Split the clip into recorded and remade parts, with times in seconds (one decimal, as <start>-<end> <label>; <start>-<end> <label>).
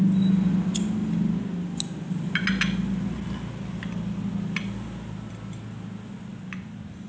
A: 0.0-7.1 recorded